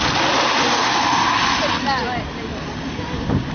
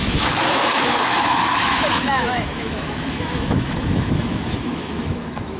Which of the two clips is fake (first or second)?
second